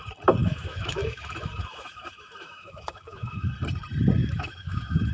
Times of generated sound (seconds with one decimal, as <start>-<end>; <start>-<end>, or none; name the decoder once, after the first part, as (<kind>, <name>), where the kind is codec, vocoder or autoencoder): 0.4-3.5 (autoencoder, DAC-VAE); 4.2-5.1